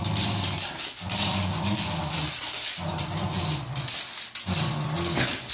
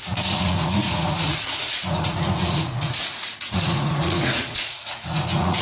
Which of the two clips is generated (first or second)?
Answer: second